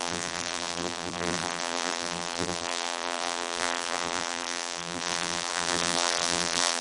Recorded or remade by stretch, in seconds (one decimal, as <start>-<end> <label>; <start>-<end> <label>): 0.0-6.8 remade